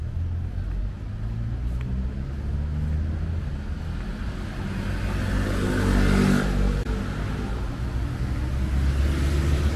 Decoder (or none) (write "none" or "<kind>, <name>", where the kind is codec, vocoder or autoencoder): none